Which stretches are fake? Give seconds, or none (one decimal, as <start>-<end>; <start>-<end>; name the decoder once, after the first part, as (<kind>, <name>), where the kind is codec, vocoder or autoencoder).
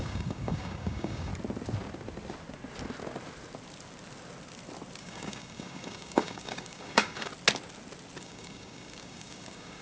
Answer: 0.0-1.3 (codec, DAC); 5.0-7.3; 8.2-9.8